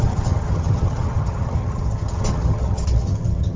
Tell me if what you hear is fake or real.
fake